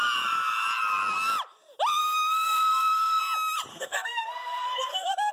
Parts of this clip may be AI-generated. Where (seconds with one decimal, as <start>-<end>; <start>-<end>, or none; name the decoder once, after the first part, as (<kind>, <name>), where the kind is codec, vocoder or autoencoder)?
2.0-3.2 (codec, SNAC); 3.7-5.3